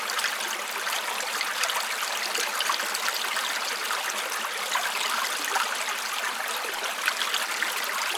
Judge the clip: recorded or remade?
recorded